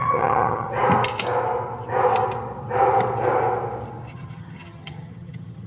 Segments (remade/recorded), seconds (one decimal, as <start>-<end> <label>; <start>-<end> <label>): 0.0-0.7 remade; 0.7-4.1 recorded; 4.1-5.7 remade